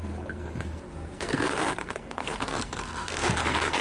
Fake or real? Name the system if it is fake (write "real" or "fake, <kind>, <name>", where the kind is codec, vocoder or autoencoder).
fake, codec, SNAC